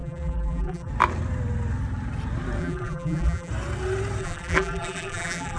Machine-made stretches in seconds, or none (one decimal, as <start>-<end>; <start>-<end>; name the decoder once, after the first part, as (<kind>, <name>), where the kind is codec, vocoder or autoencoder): 0.0-0.9 (vocoder, BigVGAN v2); 2.6-3.5; 4.2-5.6